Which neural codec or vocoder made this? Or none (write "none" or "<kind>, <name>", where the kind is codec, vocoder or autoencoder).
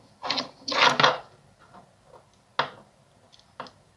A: none